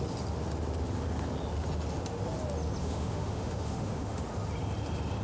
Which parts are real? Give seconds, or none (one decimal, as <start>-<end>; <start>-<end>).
0.0-2.8; 4.2-5.2